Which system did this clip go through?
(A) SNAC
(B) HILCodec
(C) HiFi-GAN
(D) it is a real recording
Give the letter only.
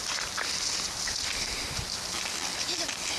D